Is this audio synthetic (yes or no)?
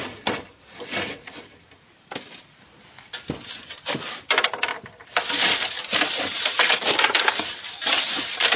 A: no